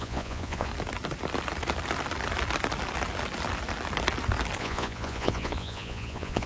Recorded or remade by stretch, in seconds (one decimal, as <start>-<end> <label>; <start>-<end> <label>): 0.0-0.7 remade; 0.7-4.6 recorded; 4.6-6.5 remade